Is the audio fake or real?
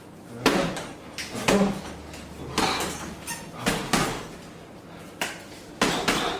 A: real